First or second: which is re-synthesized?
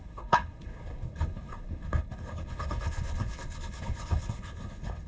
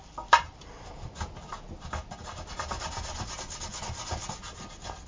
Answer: first